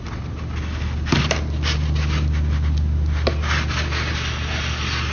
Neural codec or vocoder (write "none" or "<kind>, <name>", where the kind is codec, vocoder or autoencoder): none